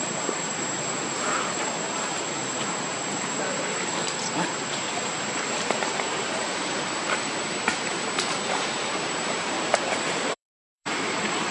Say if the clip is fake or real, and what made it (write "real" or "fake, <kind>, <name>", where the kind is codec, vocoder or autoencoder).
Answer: fake, vocoder, BigVGAN v2